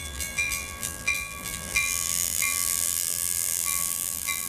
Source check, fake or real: fake